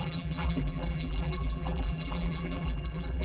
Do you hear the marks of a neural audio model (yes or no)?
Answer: yes